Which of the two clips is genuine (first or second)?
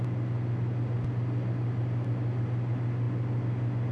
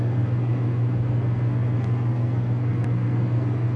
first